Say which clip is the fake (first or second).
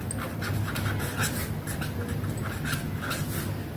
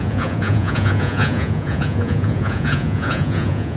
second